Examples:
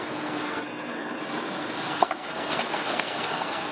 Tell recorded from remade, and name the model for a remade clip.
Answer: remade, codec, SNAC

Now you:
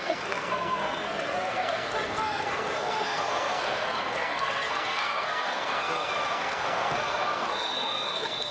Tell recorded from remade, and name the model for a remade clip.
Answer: remade, codec, SNAC